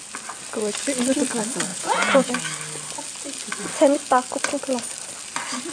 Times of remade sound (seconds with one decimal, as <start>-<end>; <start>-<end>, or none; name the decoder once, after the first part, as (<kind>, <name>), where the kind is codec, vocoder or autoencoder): 1.7-2.3 (vocoder, Vocos)